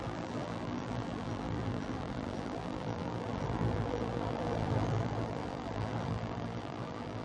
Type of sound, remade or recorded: remade